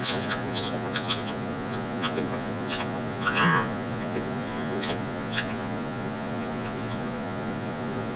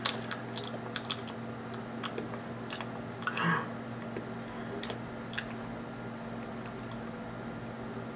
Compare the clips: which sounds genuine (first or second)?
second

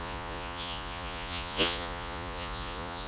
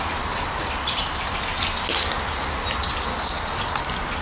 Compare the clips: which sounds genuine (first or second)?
second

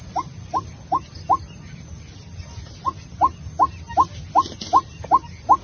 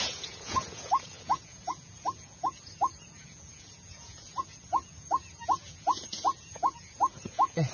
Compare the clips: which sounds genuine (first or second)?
first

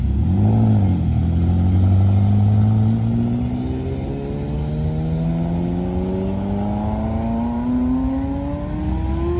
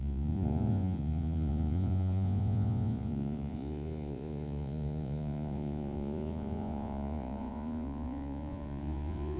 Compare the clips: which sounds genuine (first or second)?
first